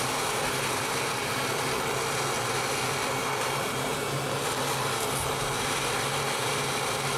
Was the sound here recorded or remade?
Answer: recorded